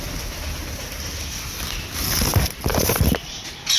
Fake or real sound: real